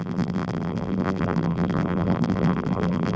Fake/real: fake